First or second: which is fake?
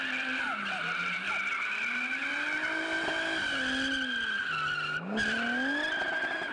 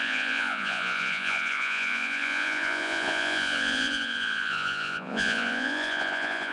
second